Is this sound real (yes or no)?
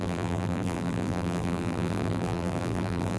no